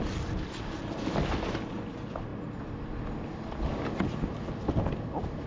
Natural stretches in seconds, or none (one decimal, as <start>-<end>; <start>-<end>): 0.0-5.5